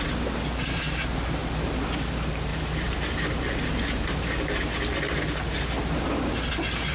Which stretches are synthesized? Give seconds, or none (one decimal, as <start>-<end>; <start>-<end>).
none